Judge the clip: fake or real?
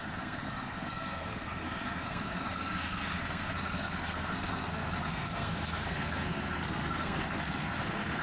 fake